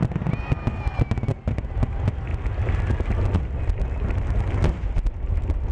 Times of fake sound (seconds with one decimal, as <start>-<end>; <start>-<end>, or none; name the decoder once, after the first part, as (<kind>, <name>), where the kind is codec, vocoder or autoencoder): none